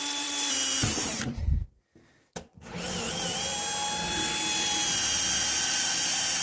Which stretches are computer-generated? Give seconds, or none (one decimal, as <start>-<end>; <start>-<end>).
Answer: 0.0-2.0; 3.1-3.5

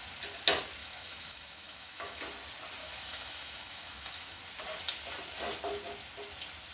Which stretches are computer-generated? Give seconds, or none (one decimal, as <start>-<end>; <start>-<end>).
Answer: 0.8-2.2; 2.8-4.4

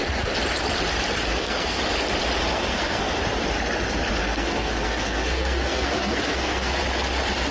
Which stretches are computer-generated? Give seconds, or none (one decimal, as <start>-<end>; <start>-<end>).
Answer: 1.3-1.8; 2.5-3.1; 4.2-6.8

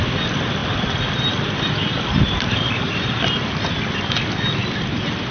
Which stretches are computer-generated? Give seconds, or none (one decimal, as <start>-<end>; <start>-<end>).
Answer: 0.6-3.8; 4.6-5.3

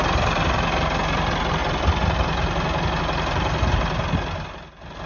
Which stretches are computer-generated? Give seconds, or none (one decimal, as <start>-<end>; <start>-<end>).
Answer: none

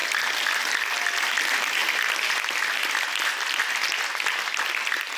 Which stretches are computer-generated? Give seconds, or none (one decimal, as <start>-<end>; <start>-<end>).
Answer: 0.0-0.7

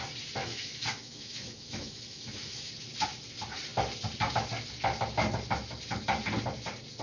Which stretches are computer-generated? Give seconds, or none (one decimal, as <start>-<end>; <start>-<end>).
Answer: 0.4-2.7

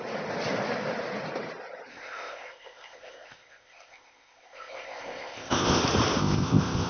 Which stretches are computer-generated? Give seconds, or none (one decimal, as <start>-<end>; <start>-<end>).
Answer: 1.9-5.8; 6.2-6.9